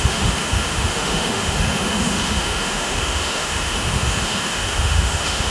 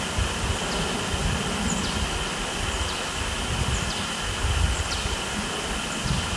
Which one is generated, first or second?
first